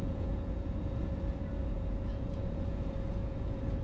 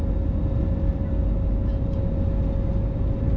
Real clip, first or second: second